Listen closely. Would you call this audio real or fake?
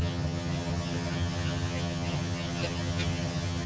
fake